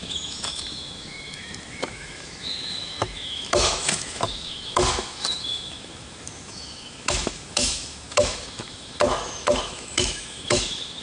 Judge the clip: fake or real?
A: fake